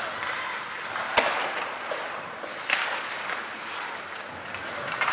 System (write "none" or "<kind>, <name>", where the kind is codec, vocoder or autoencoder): none